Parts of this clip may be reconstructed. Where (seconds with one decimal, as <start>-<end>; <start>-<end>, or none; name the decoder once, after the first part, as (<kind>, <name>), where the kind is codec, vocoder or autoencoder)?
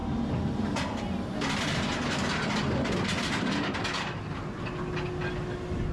none